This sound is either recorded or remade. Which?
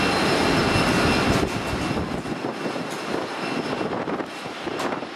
recorded